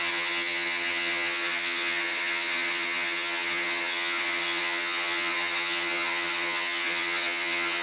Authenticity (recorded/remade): remade